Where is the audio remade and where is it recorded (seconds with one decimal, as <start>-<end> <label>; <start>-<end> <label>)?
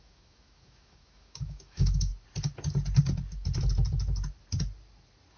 0.0-2.1 remade; 2.1-5.4 recorded